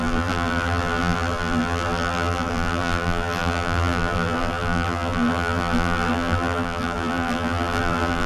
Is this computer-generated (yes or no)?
yes